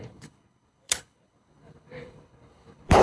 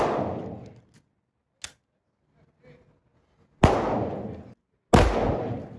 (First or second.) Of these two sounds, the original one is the second